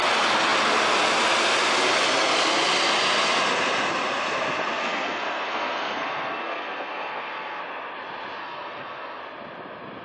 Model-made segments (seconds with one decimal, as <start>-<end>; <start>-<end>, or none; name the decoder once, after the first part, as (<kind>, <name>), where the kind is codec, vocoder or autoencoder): 4.8-7.6 (codec, SNAC); 8.4-9.2